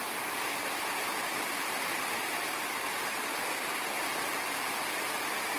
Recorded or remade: remade